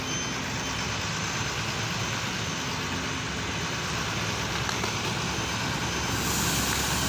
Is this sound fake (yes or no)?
no